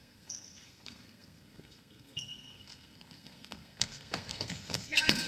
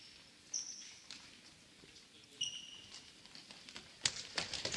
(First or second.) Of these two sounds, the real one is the second